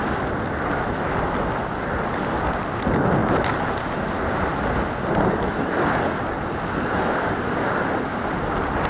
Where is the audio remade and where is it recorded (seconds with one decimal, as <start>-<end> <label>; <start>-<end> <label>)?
0.0-3.2 recorded; 3.2-4.5 remade; 4.5-8.9 recorded